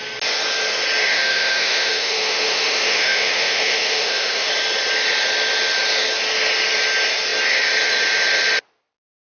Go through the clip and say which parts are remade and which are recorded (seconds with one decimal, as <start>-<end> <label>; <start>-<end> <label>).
0.0-1.0 recorded; 1.0-4.5 remade; 4.5-9.3 recorded